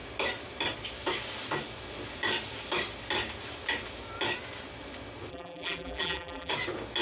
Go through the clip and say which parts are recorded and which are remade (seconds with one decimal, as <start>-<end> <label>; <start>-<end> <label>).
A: 0.0-5.3 recorded; 5.3-6.5 remade; 6.5-7.0 recorded